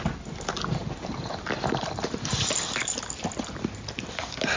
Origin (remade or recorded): recorded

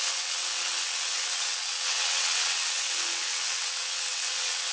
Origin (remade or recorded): remade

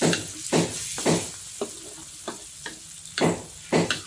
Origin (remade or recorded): recorded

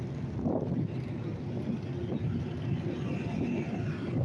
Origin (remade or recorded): recorded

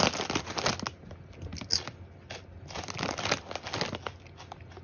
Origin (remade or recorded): recorded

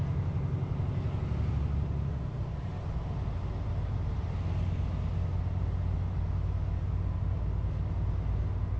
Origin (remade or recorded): recorded